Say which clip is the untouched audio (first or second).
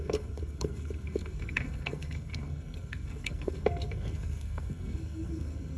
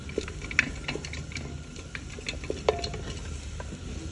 second